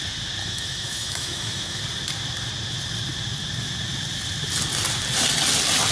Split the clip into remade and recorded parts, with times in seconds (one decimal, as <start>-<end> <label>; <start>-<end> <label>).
0.0-0.4 recorded; 0.4-1.8 remade; 1.8-5.9 recorded